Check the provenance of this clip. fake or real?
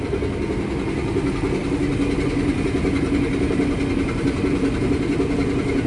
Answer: real